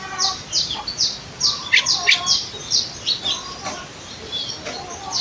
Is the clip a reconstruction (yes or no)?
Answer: no